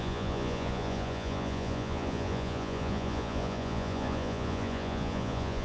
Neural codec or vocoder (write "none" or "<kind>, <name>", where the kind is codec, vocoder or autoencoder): vocoder, Vocos